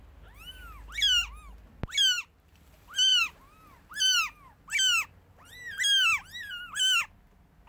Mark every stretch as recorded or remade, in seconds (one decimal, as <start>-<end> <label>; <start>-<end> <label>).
0.0-7.7 recorded